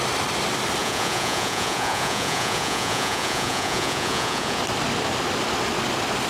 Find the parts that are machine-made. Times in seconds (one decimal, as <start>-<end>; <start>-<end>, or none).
0.8-4.6